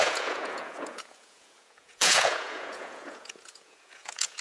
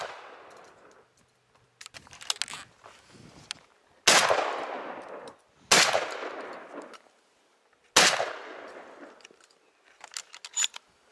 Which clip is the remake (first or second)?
first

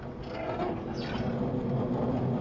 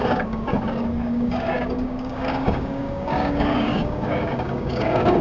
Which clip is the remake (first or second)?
second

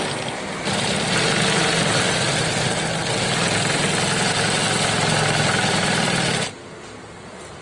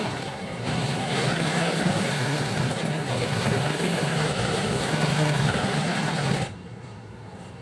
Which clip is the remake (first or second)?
second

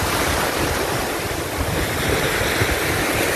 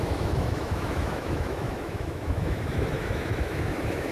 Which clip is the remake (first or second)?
second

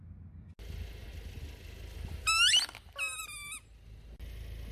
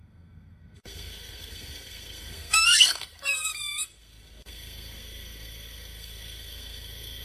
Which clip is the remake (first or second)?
second